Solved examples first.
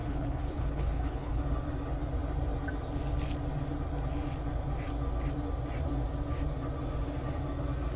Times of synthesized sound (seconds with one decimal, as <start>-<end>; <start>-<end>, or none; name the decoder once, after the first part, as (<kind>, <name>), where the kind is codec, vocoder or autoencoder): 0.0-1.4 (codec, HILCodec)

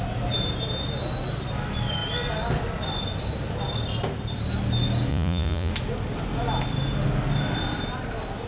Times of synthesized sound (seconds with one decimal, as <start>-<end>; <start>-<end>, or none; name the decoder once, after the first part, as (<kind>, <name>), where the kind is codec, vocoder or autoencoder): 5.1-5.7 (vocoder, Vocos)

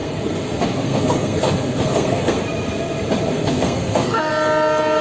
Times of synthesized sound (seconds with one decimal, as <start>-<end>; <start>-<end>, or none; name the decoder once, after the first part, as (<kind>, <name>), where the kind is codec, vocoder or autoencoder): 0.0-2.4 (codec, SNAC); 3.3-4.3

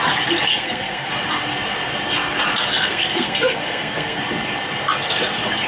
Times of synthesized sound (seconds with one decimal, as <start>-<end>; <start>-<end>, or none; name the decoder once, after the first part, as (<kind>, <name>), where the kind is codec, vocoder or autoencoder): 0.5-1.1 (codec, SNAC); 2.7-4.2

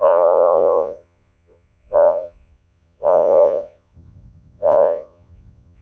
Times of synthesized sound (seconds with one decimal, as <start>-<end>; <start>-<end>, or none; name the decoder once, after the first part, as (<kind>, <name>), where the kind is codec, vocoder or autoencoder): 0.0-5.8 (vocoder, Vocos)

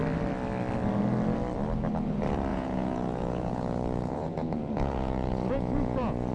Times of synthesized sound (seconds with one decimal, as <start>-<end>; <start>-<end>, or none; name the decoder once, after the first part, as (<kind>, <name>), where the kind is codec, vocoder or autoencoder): 2.5-6.3 (vocoder, Vocos)

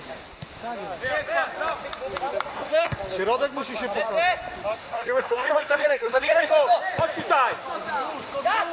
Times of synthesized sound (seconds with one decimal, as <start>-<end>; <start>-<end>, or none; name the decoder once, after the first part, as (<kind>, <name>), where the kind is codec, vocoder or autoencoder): 2.5-3.0 (codec, SNAC); 4.8-6.5

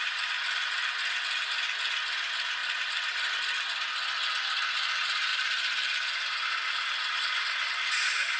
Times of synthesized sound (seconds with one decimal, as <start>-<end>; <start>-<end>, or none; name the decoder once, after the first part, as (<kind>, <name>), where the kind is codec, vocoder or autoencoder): none